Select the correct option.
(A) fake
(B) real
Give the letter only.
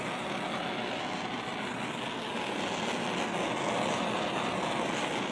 B